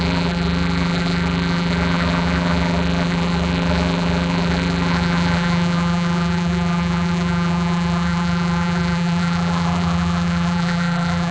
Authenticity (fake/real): fake